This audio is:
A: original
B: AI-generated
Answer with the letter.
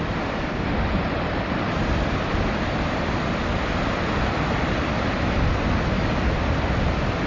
A